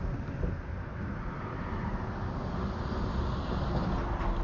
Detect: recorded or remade recorded